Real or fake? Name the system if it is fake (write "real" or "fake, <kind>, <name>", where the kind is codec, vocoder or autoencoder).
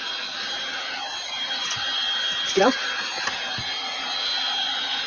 real